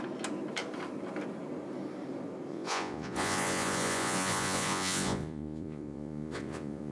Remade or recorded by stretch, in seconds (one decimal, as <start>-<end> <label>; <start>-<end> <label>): 0.0-2.5 recorded; 2.5-6.9 remade